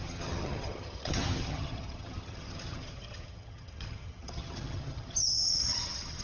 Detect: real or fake fake